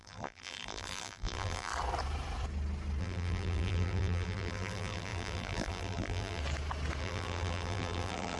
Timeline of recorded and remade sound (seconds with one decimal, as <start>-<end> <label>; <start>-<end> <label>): 0.0-1.7 remade; 1.7-3.0 recorded; 3.0-6.4 remade; 6.4-7.0 recorded; 7.0-8.4 remade